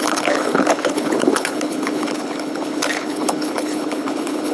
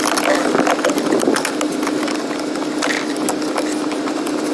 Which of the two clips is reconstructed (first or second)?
first